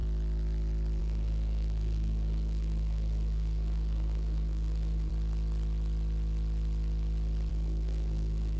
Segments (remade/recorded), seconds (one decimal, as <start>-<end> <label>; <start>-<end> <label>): 0.0-1.0 recorded; 1.0-5.1 remade; 5.1-7.5 recorded; 7.5-8.6 remade